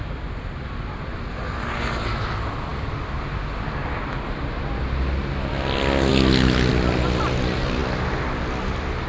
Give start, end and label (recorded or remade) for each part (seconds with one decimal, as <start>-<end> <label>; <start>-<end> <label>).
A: 0.0-9.1 recorded